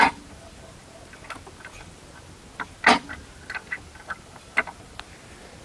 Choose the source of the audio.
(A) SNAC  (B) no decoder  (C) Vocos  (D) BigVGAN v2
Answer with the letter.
B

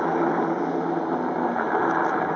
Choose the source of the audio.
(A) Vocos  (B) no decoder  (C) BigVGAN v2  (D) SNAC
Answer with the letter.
C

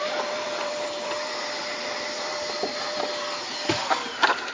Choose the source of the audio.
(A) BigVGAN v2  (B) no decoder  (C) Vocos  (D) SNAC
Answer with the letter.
A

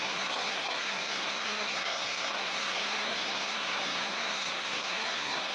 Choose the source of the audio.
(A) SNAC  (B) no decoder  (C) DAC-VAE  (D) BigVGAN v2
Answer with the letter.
A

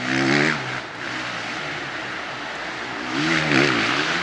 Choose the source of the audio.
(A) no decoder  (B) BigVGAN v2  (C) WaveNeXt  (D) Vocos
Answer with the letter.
A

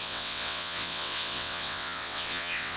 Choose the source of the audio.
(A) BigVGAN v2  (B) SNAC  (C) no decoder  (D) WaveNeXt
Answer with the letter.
D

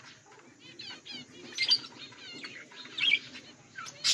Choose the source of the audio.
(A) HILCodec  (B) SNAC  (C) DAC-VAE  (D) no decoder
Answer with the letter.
D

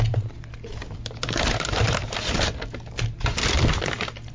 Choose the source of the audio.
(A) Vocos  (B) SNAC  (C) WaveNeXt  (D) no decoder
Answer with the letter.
D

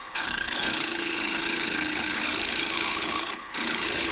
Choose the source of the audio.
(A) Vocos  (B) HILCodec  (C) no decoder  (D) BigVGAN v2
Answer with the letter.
B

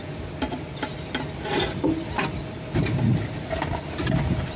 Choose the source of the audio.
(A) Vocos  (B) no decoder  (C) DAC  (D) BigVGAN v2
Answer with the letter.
B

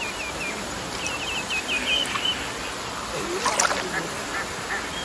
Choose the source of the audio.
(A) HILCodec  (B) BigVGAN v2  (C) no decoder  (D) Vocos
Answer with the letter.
C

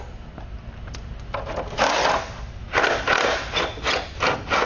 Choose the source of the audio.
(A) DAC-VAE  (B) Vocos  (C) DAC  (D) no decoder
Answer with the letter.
D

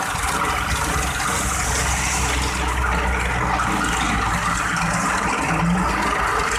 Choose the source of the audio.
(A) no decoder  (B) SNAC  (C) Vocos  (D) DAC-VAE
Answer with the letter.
A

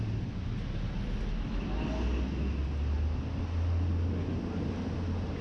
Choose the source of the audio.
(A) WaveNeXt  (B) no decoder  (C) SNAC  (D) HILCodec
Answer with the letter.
B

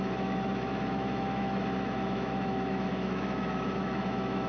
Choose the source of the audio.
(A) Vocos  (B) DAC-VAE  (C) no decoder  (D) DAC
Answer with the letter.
B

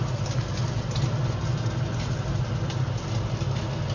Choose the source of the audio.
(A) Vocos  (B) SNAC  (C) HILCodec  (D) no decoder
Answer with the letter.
D